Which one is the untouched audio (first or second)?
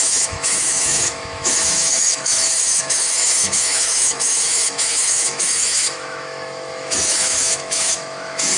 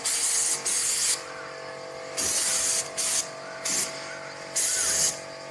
second